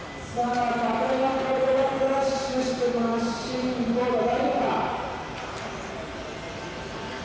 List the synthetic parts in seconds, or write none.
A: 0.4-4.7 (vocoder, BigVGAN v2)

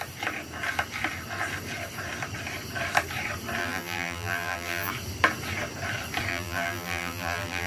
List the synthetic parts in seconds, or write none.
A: 3.6-4.9 (vocoder, BigVGAN v2); 6.3-7.7

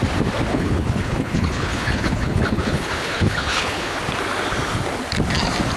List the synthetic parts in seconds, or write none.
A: 0.5-4.0 (codec, HILCodec)

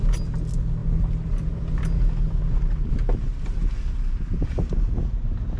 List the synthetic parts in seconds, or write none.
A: none

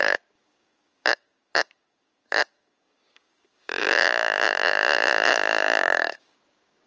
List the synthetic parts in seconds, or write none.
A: 0.0-6.9 (codec, DAC)

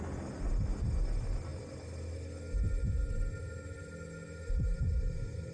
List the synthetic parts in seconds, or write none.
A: none